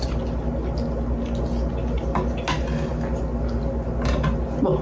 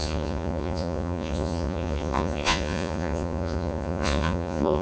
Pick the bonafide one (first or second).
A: first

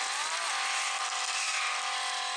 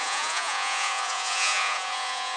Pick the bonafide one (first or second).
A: first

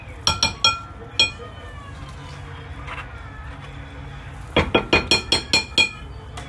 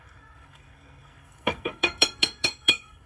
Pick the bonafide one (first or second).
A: first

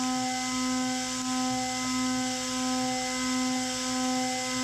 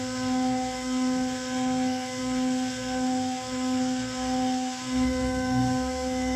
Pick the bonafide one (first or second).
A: first